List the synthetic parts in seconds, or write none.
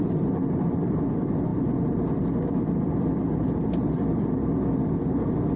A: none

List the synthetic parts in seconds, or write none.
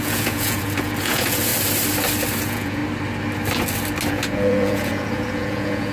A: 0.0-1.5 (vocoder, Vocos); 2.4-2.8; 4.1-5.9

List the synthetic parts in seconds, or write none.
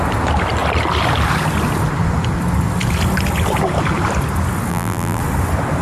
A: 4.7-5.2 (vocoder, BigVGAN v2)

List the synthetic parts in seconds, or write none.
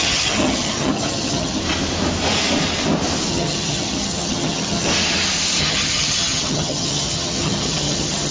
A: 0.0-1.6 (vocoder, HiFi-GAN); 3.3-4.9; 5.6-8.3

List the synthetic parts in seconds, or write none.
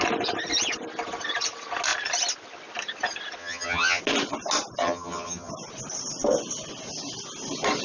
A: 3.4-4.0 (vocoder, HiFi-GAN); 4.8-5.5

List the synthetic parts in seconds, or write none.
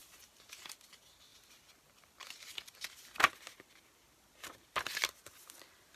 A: none